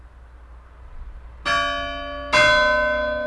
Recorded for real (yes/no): yes